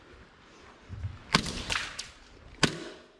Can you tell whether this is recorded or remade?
recorded